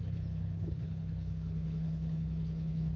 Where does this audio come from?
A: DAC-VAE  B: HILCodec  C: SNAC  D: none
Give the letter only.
B